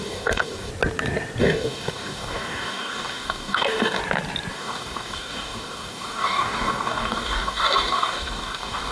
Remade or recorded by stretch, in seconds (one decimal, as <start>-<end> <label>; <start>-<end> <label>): 0.0-0.7 remade; 0.7-1.4 recorded; 1.4-4.0 remade; 4.0-4.5 recorded; 4.5-8.9 remade